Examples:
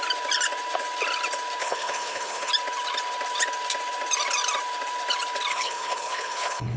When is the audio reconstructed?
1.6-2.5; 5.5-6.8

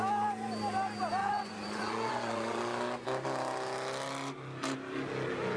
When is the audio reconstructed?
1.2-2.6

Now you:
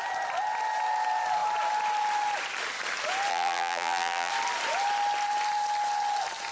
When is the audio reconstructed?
3.3-4.3

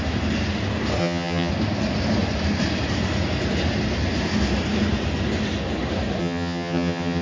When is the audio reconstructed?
1.0-1.5; 6.2-7.2

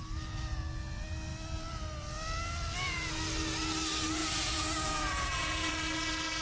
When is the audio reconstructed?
4.2-5.7

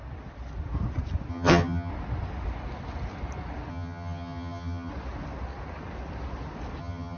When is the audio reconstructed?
1.3-1.9; 3.7-4.9; 6.8-7.2